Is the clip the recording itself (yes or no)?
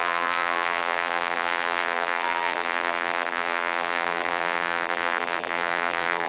no